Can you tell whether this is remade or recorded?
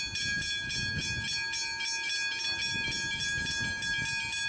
recorded